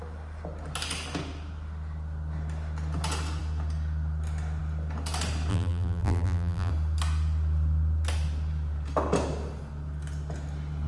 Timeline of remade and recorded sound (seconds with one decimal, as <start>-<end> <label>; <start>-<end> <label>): 0.0-5.5 recorded; 5.5-6.7 remade; 6.7-10.9 recorded